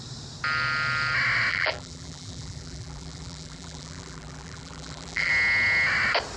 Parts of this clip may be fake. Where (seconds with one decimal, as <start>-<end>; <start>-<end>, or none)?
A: 1.5-5.3

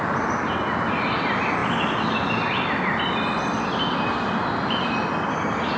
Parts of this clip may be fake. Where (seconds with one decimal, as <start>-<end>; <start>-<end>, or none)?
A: none

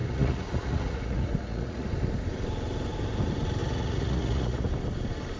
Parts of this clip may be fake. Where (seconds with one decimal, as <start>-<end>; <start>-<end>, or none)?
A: 0.0-1.9; 3.6-4.7

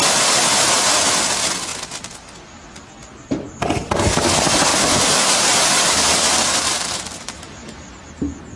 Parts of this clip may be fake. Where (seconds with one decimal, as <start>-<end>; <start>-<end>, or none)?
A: 3.0-3.6; 4.7-8.1

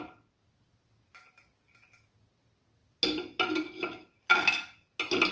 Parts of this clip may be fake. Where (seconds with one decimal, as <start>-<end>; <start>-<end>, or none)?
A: none

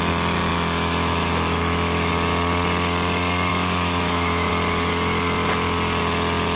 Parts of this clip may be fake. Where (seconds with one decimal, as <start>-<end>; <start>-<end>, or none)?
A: 0.5-2.1; 3.5-4.5